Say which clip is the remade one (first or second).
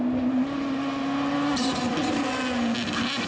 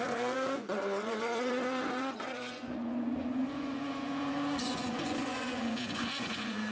second